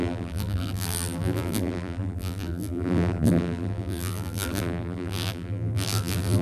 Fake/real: fake